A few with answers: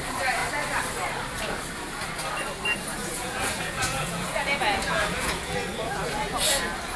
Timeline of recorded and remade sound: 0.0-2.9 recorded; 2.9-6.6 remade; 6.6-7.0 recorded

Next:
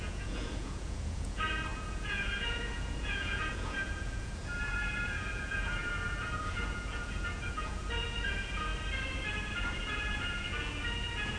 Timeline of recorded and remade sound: 0.0-8.7 remade; 8.7-9.5 recorded; 9.5-11.4 remade